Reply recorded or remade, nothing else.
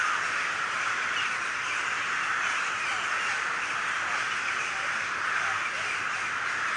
recorded